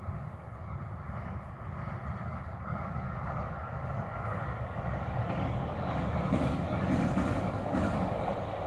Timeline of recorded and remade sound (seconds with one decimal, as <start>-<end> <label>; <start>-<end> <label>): 0.0-0.8 remade; 0.8-2.2 recorded; 2.2-8.7 remade